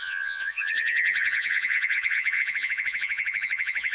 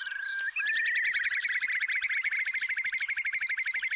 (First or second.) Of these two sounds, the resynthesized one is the first